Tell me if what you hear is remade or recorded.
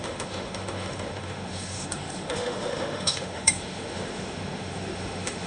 remade